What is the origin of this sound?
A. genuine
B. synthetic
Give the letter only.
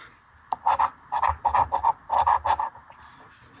A